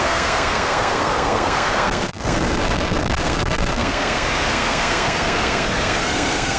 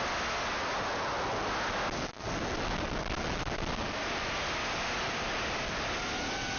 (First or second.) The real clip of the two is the second